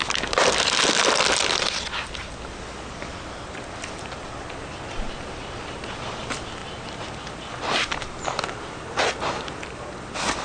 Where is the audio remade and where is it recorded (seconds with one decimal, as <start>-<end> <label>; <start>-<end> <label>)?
0.0-10.4 recorded